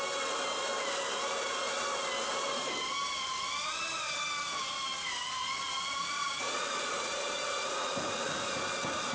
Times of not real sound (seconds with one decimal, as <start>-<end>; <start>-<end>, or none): 4.9-8.6